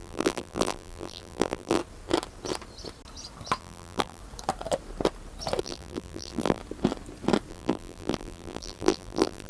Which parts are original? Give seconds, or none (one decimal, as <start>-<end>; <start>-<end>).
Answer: 1.8-3.6; 4.2-5.6; 6.6-7.5